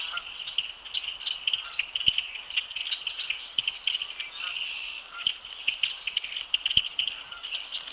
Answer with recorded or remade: recorded